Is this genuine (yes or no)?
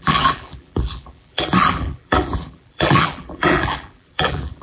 no